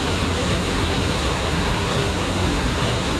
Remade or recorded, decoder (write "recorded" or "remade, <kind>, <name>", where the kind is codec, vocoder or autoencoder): remade, codec, SNAC